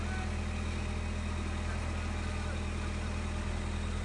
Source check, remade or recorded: recorded